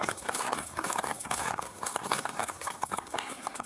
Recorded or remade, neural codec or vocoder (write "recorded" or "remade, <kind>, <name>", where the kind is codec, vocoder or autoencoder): remade, codec, SNAC